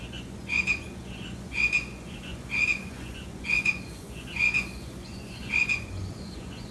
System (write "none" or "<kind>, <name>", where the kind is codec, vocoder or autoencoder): vocoder, Vocos